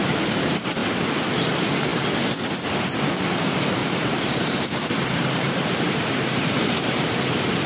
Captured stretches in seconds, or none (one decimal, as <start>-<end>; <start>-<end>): 0.0-3.8; 7.2-7.7